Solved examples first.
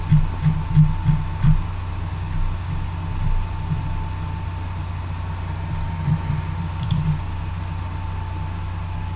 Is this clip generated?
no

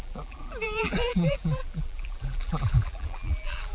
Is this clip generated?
yes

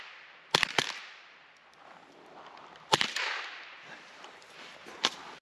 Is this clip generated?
yes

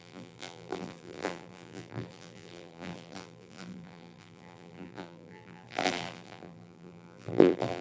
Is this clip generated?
yes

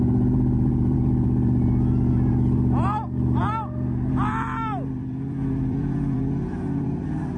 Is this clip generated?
yes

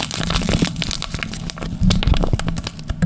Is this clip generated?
no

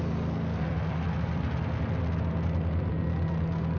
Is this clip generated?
no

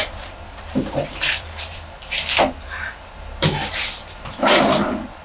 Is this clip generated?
yes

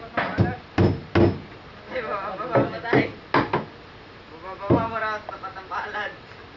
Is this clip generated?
no